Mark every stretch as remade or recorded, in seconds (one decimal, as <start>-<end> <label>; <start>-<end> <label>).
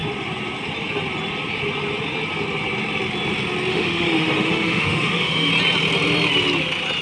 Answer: 0.0-3.7 recorded; 3.7-5.5 remade; 5.5-7.0 recorded